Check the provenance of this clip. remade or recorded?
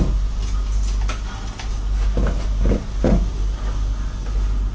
recorded